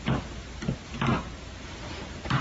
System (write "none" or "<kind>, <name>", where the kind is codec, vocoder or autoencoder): none